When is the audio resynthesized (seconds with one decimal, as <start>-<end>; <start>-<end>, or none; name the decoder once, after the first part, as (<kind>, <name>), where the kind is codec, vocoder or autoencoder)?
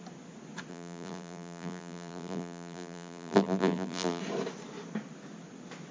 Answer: 0.7-4.2 (vocoder, BigVGAN v2)